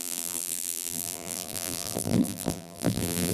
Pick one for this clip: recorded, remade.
remade